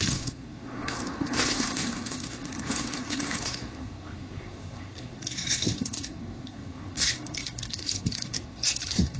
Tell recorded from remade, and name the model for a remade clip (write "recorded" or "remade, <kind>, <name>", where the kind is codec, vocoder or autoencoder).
remade, codec, SNAC